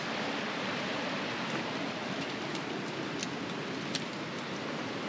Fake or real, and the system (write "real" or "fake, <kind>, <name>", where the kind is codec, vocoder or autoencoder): real